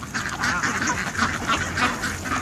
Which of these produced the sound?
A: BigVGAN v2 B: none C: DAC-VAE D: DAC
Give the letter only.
B